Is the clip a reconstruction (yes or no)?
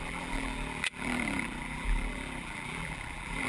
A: yes